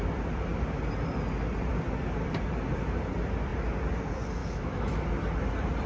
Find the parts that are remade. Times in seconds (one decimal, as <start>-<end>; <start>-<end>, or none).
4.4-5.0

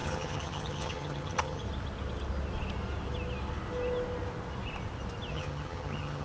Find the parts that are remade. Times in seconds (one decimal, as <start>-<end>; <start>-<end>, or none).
0.0-1.6; 5.3-6.2

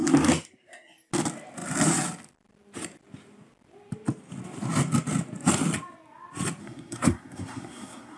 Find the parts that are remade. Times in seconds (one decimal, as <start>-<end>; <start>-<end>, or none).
6.6-8.2

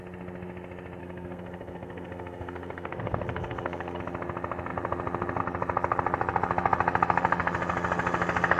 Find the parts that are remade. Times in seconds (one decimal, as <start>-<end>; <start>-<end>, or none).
1.0-4.0